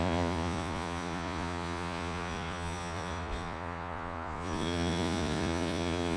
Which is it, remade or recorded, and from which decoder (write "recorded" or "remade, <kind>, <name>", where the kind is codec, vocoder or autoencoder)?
remade, vocoder, Vocos